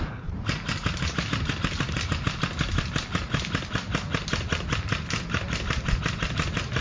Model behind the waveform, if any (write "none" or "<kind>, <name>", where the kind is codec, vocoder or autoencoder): none